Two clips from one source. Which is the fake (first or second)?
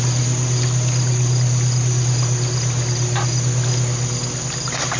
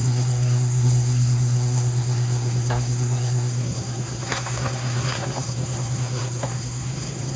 second